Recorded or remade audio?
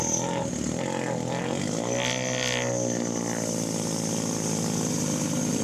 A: recorded